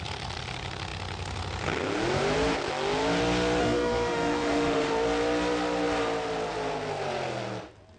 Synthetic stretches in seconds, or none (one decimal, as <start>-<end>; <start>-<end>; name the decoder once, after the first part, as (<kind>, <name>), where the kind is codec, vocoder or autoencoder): 3.6-4.9 (autoencoder, DAC-VAE)